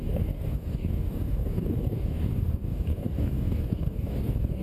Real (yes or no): no